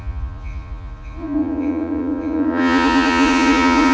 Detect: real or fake fake